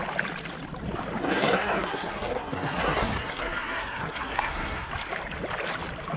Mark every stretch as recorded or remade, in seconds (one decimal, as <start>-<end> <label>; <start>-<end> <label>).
0.0-1.2 recorded; 1.2-4.9 remade; 4.9-6.2 recorded